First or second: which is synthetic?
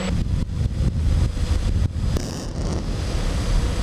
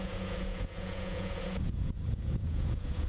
second